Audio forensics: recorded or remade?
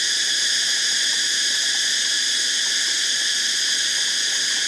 recorded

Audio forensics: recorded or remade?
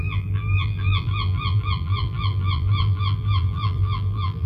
remade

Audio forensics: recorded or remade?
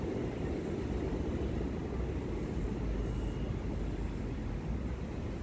recorded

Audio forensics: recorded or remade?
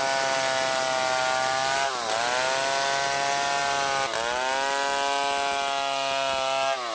recorded